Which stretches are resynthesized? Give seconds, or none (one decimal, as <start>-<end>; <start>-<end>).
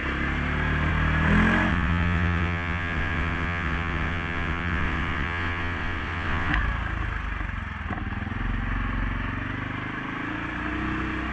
1.7-6.5